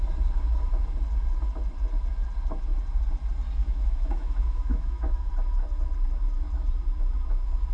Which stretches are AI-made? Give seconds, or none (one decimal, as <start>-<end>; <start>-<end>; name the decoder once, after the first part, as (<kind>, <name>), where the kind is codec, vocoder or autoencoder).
3.6-5.3 (autoencoder, DAC-VAE)